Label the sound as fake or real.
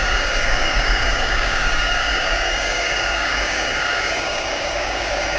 fake